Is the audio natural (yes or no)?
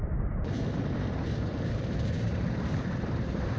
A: no